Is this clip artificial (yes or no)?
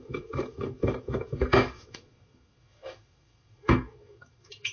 yes